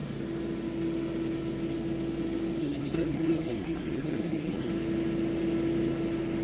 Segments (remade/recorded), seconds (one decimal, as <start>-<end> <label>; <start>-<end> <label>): 0.0-2.6 recorded; 2.6-4.7 remade; 4.7-6.4 recorded